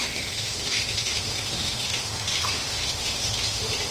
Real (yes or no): no